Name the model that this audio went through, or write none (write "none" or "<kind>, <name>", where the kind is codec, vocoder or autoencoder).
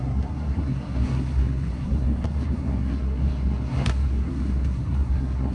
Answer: codec, SNAC